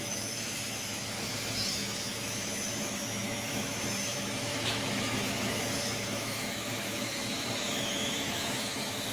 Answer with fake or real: fake